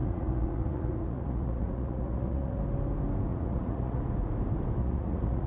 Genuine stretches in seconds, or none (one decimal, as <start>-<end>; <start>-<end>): 2.6-3.3; 4.0-4.8